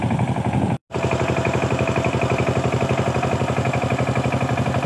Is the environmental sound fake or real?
real